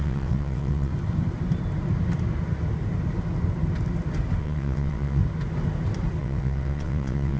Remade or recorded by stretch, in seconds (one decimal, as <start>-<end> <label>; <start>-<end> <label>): 0.0-0.9 remade; 0.9-4.4 recorded; 4.4-5.2 remade; 5.2-6.2 recorded; 6.2-7.4 remade